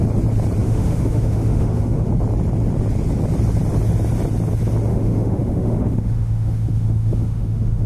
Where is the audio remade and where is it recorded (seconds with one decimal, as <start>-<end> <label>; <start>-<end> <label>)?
0.0-0.6 recorded; 0.6-2.1 remade; 2.1-4.9 recorded; 4.9-7.9 remade